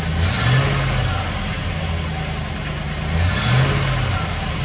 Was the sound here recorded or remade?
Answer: recorded